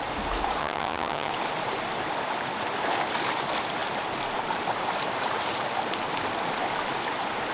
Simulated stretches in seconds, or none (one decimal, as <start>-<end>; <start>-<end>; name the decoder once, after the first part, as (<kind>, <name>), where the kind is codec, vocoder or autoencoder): 0.6-1.3 (vocoder, HiFi-GAN)